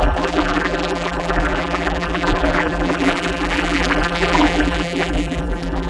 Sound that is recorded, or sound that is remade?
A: remade